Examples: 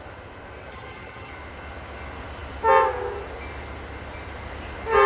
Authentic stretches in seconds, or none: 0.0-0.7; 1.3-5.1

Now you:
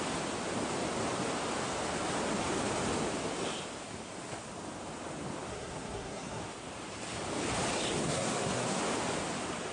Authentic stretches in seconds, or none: 0.0-5.5; 6.4-8.0; 8.8-9.7

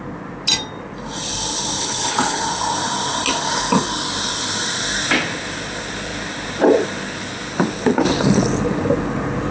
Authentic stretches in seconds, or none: 0.0-1.8; 2.4-9.5

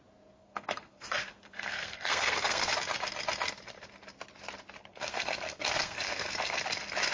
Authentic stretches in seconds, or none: 0.0-0.4; 2.7-4.9; 6.6-7.1

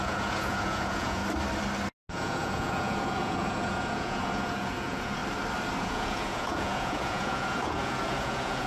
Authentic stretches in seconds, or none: 1.2-2.1; 5.2-5.8

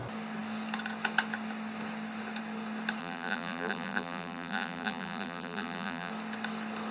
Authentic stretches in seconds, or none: 0.0-3.0; 6.1-6.9